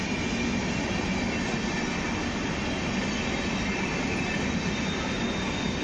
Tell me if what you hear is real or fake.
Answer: real